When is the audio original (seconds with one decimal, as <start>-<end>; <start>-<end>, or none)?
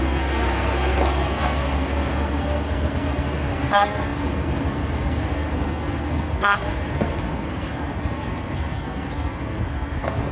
none